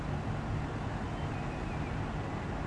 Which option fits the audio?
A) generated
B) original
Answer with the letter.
B